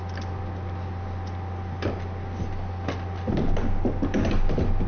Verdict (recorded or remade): recorded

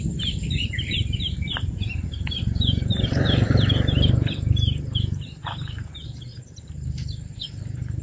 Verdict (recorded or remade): remade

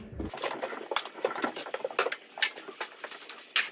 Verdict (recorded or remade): recorded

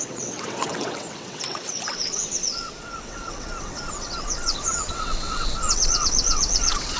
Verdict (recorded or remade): remade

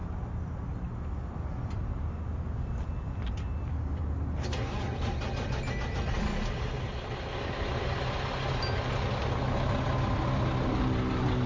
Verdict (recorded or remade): recorded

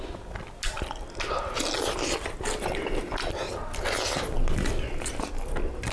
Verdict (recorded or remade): recorded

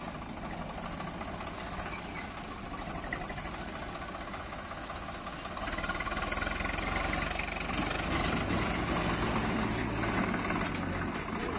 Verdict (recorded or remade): recorded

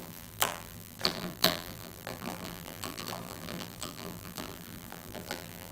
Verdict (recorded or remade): remade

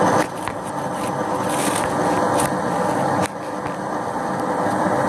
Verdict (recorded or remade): recorded